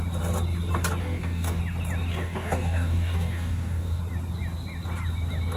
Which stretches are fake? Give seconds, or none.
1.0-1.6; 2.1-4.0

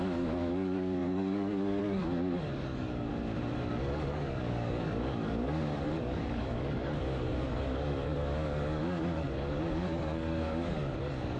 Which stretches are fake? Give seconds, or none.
0.0-3.1; 3.7-11.4

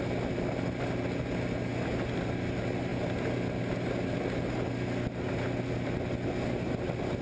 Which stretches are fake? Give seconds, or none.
none

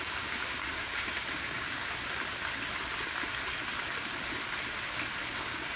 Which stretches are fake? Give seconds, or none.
0.0-1.8; 5.3-5.8